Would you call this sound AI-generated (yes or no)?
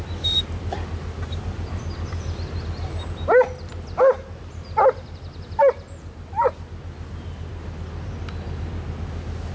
no